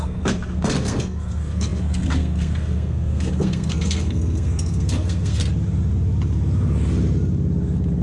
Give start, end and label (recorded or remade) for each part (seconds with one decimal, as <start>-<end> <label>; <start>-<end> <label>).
0.0-5.4 remade; 5.4-8.0 recorded